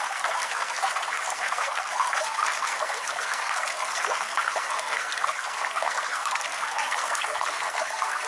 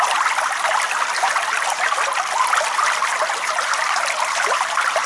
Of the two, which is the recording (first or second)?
second